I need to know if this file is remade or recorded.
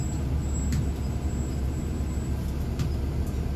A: recorded